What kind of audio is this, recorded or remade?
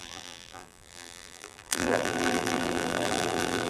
remade